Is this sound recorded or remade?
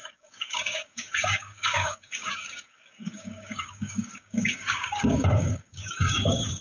remade